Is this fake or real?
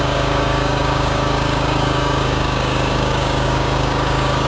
fake